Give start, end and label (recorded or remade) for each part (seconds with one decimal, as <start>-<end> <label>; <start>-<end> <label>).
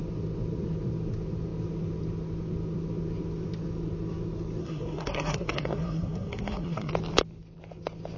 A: 0.0-4.6 recorded; 4.6-6.9 remade; 6.9-8.2 recorded